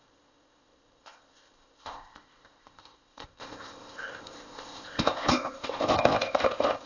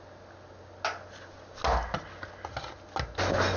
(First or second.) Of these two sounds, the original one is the second